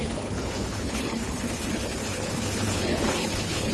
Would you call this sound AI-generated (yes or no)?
yes